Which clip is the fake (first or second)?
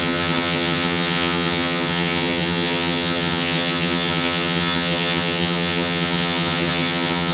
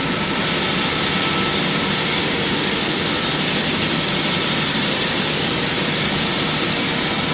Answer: first